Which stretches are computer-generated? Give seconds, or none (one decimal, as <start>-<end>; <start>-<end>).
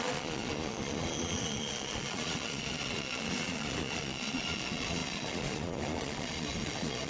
0.0-7.1